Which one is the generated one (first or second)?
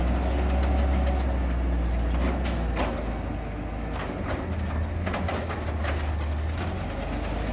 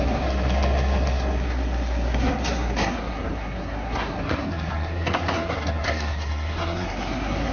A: second